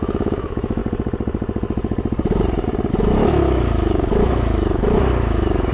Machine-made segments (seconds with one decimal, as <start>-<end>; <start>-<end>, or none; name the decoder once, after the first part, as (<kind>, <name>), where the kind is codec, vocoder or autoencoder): 0.0-0.8 (autoencoder, DAC-VAE); 2.9-5.7